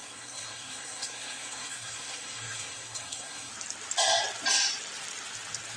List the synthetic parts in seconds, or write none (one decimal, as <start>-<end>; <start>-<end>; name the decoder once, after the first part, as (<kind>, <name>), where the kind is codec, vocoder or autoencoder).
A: 0.0-3.5 (codec, SNAC)